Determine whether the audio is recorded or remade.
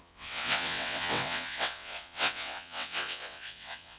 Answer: remade